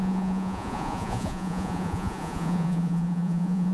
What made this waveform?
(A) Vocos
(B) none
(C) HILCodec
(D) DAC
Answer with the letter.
A